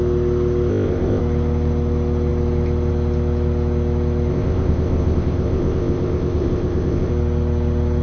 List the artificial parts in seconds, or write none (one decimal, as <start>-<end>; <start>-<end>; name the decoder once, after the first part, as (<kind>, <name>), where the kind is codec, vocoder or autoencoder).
0.7-1.2 (codec, ZipCodec); 4.3-7.1